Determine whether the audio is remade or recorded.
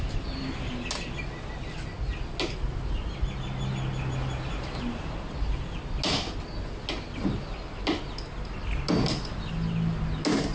recorded